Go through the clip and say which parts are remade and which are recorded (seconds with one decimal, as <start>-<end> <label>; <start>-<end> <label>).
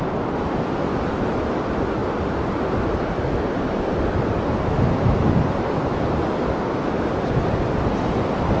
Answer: 0.0-8.6 recorded